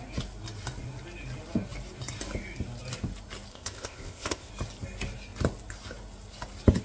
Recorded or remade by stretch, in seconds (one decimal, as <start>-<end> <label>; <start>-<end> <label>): 0.0-3.5 recorded; 3.5-4.5 remade; 4.5-6.8 recorded